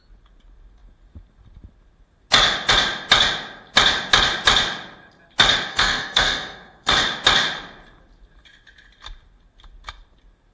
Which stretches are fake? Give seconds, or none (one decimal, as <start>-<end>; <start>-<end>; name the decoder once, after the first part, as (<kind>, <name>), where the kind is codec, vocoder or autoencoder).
5.7-6.9 (codec, SNAC)